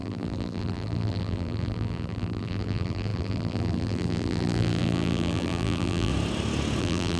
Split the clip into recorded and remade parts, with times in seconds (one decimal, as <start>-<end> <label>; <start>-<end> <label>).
0.0-6.1 remade; 6.1-6.8 recorded; 6.8-7.2 remade